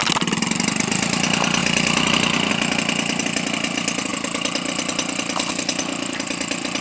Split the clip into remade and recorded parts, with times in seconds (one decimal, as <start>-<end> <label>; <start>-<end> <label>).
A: 0.0-6.8 recorded

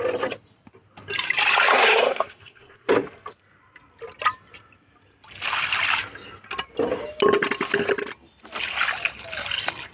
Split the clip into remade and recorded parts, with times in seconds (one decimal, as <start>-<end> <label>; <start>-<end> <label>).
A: 0.0-1.7 recorded; 1.7-2.9 remade; 2.9-9.9 recorded

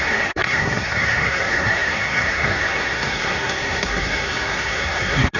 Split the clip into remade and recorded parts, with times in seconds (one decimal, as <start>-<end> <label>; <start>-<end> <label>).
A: 0.0-5.4 remade

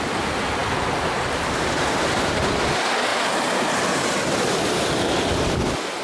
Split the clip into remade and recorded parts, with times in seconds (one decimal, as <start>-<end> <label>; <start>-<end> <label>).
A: 0.0-6.0 recorded

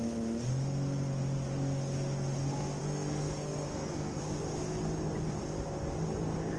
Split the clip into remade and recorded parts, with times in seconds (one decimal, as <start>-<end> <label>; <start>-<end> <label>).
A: 0.0-2.8 recorded; 2.8-4.2 remade; 4.2-6.6 recorded